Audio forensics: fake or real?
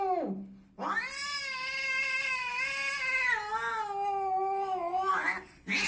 real